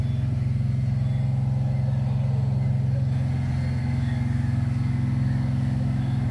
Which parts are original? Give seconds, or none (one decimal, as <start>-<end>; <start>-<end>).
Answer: 0.0-3.8